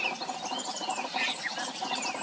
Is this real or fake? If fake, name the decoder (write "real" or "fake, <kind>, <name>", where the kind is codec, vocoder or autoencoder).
real